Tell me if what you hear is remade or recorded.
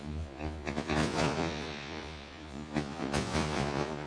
remade